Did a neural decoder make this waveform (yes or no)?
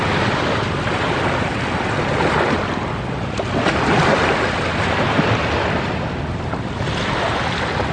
no